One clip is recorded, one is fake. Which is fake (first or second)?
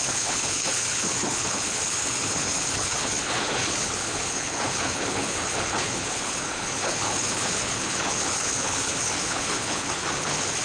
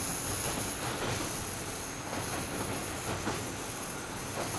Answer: first